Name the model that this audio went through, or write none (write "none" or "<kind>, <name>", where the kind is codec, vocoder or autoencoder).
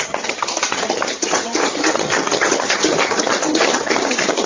vocoder, HiFi-GAN